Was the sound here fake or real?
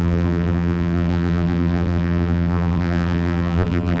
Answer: fake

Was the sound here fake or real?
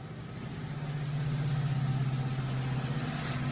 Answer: real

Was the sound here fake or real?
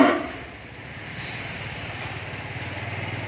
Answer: real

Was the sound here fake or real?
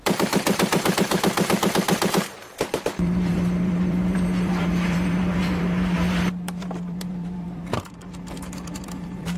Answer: fake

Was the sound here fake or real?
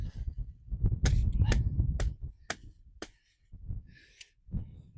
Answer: real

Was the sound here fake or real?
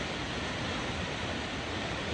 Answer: real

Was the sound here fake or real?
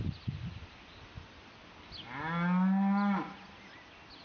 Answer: real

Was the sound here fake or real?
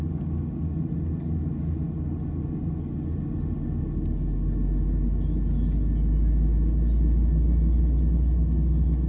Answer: real